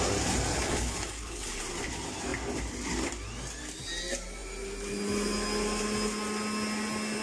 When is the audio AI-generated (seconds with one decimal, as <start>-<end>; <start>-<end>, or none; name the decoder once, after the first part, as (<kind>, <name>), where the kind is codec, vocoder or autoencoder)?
0.5-1.6 (codec, HILCodec)